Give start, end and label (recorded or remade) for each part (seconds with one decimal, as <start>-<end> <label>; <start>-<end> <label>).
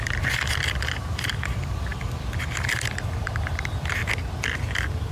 0.0-1.9 remade; 1.9-3.2 recorded; 3.2-4.0 remade; 4.0-5.1 recorded